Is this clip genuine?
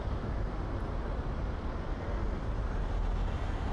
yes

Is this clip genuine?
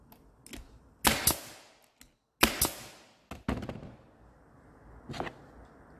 yes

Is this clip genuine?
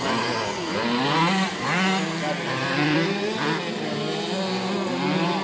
yes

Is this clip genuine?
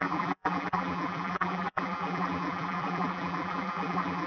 no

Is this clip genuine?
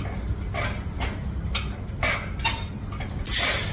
yes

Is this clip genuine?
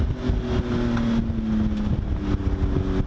yes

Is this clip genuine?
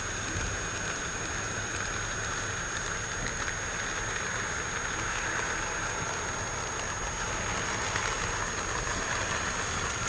yes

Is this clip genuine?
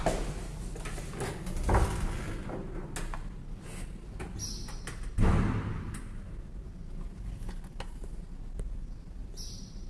yes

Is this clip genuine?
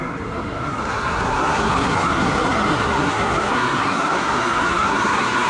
no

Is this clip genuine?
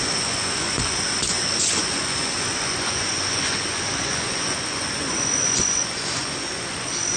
no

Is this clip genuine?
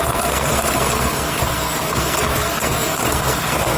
no